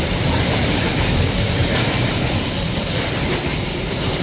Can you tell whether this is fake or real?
real